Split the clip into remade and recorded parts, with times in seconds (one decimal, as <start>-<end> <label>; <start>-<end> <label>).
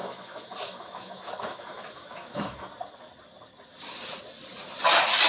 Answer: 0.0-2.7 remade; 2.7-5.3 recorded